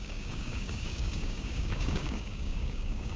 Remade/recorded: remade